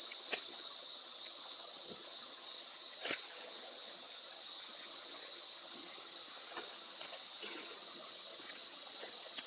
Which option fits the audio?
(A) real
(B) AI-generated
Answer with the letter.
B